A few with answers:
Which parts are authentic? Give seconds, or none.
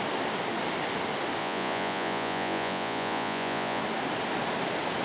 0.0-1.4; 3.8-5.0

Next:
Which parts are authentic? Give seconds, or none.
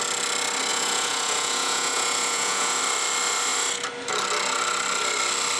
0.0-0.7; 2.8-5.6